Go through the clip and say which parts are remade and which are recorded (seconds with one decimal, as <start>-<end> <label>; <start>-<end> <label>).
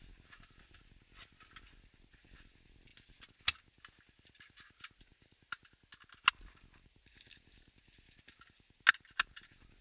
0.0-9.8 recorded